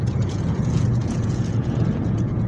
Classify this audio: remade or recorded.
remade